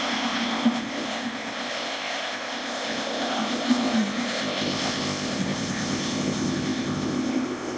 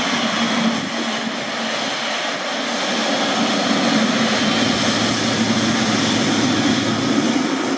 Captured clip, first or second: second